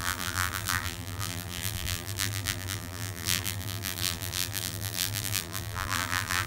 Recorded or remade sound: remade